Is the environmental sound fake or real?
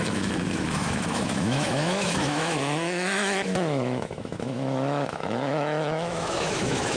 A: fake